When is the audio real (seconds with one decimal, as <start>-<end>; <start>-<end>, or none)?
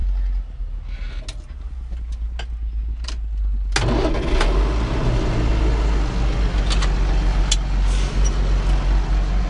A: 0.0-9.5